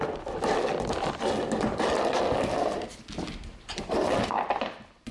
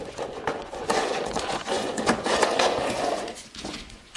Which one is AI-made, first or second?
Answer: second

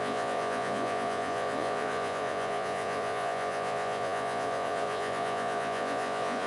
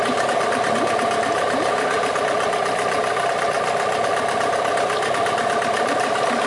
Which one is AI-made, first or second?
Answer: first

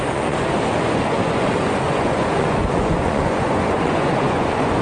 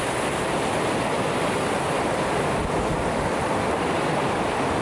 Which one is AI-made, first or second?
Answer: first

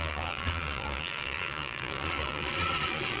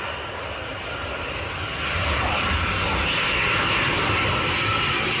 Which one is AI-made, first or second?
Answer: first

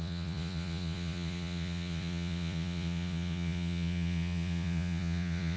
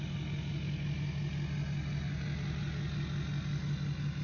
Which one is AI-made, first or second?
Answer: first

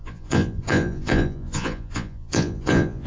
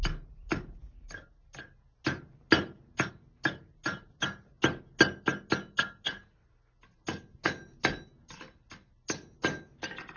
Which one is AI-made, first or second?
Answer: first